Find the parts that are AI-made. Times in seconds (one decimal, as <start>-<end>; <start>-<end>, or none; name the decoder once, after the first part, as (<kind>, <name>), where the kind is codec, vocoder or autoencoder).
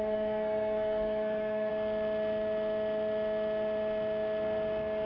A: 0.0-1.7 (codec, SNAC)